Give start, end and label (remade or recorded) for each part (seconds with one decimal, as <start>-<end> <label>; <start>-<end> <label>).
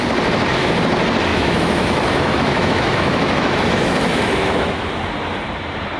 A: 0.0-1.3 recorded; 1.3-4.9 remade; 4.9-6.0 recorded